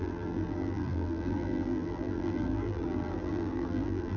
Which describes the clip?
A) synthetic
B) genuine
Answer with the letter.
A